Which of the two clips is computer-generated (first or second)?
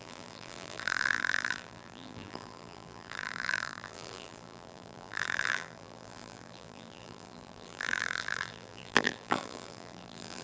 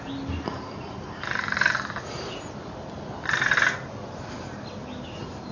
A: first